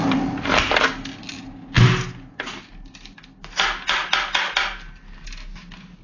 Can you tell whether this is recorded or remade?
recorded